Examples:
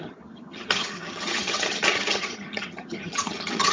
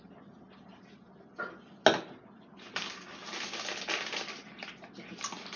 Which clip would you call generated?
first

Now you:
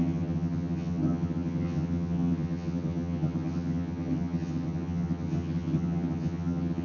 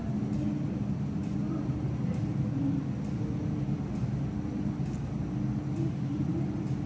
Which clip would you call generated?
first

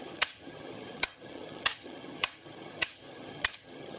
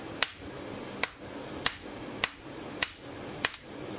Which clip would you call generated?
first